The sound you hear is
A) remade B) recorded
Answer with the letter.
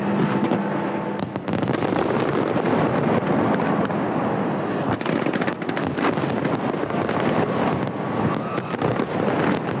B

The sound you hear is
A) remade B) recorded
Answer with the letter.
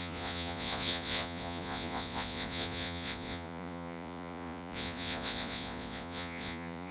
A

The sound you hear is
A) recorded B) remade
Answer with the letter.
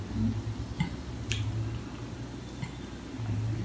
A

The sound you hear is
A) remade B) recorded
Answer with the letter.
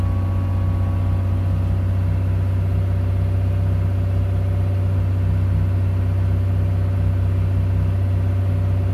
B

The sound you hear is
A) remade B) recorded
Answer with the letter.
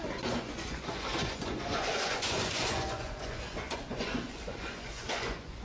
A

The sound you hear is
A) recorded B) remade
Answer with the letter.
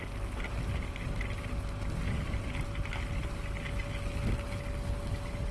A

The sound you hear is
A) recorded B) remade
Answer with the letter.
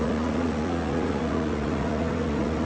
B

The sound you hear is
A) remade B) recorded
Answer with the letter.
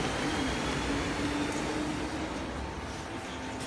B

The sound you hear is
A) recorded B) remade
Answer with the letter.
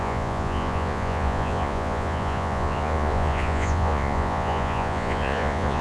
B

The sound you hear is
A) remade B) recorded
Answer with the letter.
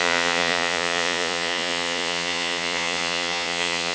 A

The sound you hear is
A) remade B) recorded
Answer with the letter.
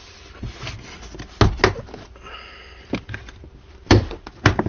B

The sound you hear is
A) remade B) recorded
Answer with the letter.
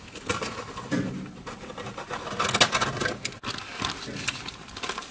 B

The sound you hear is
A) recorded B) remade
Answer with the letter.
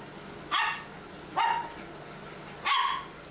A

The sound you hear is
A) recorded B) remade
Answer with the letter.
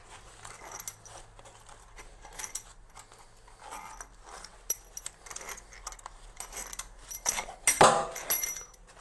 A